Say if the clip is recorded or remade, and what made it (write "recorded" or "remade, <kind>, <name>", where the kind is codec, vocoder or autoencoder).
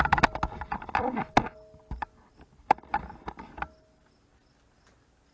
recorded